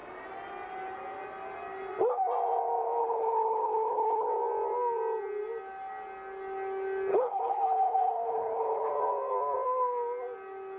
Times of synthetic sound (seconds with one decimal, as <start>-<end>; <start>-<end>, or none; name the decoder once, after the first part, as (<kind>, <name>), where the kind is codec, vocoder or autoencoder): 3.0-4.3 (codec, HILCodec); 7.1-8.9

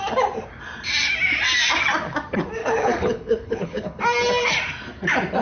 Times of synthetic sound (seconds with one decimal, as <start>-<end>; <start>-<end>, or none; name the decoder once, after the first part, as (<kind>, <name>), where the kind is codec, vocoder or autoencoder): 2.6-4.0 (codec, HILCodec)

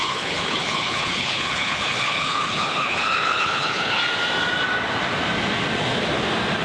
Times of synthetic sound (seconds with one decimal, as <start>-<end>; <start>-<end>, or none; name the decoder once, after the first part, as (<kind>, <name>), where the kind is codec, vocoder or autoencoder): 0.0-4.0 (codec, HILCodec)

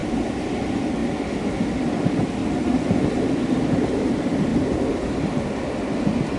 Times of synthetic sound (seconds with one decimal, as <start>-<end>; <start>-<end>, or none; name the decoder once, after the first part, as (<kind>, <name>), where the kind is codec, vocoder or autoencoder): none

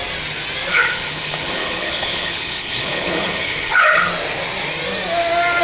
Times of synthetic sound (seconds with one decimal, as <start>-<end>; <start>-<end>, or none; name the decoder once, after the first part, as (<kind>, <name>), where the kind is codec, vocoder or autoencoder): 0.7-4.1 (codec, HILCodec)

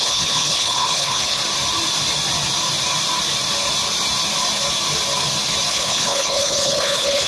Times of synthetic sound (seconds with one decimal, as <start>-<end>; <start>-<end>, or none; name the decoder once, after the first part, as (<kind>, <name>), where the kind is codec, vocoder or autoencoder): 0.0-1.4 (codec, HILCodec); 5.7-7.3

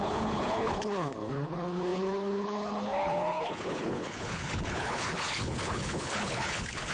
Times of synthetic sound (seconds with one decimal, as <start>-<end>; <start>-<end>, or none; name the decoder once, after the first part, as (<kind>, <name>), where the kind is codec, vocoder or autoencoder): 0.0-6.9 (codec, HILCodec)

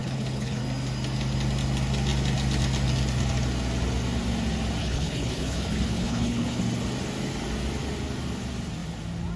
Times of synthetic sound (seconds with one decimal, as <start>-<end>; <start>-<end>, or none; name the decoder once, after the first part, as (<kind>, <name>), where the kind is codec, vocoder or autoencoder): 0.0-0.6 (codec, HILCodec); 4.8-6.6